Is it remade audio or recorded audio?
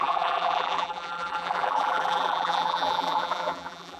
remade